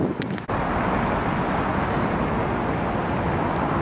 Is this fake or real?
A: real